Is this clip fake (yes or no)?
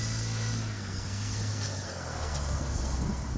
yes